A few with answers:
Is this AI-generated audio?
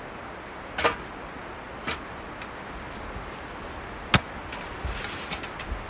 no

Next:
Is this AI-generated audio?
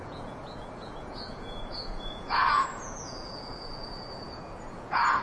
yes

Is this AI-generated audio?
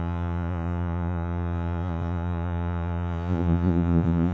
yes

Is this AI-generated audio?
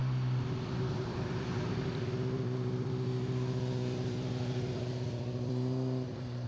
yes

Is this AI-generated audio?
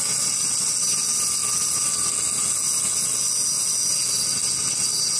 no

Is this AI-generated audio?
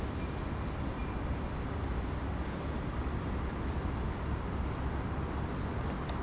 no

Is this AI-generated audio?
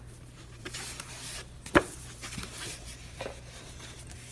yes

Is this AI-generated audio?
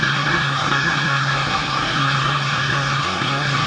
yes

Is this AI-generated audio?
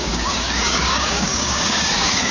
yes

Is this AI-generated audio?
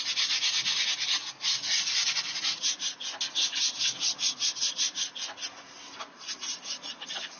no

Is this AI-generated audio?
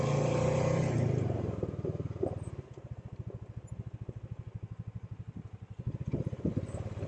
yes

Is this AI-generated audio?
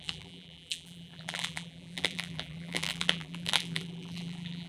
yes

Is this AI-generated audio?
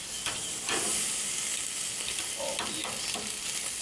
no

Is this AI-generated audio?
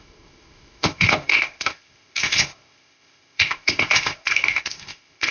yes